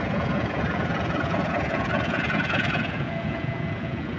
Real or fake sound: fake